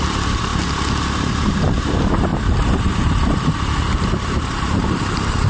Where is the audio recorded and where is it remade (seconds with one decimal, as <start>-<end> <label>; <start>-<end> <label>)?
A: 0.0-0.5 remade; 0.5-1.2 recorded; 1.2-5.5 remade